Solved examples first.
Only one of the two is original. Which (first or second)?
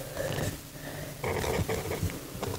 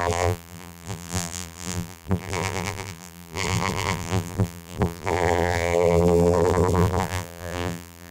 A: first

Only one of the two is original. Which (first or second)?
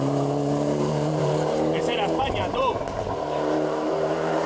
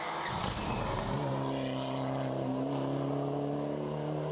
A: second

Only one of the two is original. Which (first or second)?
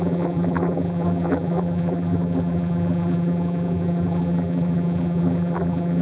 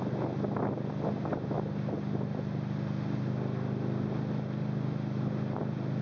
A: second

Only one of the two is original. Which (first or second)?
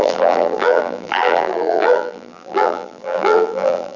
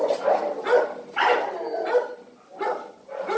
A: second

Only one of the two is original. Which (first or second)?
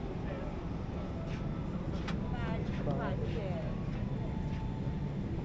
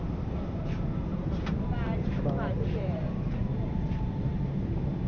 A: first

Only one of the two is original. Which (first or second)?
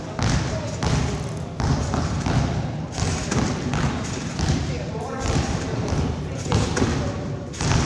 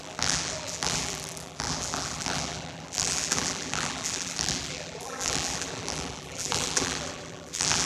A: first